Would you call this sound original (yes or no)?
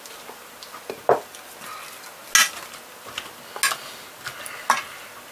yes